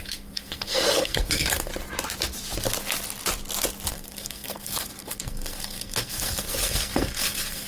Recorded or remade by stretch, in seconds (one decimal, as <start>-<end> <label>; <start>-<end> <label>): 0.0-1.7 remade; 1.7-3.9 recorded; 3.9-7.7 remade